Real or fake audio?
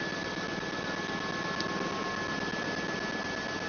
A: real